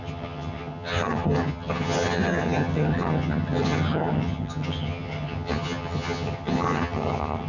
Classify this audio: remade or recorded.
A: remade